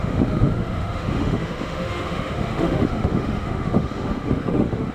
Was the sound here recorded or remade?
remade